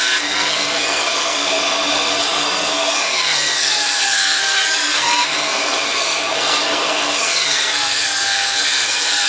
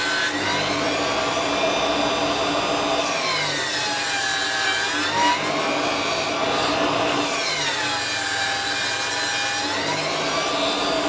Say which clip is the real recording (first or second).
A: second